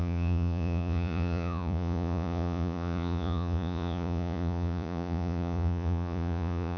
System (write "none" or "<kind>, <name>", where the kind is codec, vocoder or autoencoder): vocoder, Vocos